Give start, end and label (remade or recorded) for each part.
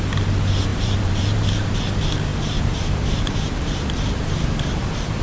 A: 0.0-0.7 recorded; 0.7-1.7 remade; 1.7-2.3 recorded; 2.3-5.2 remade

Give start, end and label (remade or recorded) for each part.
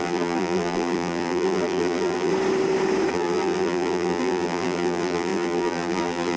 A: 0.0-2.3 remade; 2.3-3.1 recorded; 3.1-6.4 remade